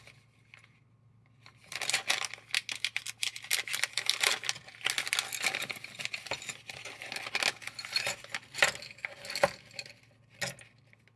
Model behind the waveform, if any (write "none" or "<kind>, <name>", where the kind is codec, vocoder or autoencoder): none